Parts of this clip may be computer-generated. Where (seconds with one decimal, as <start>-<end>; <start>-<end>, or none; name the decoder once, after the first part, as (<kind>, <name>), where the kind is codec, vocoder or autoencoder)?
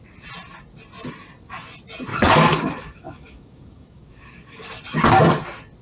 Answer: 2.1-4.7 (codec, DAC)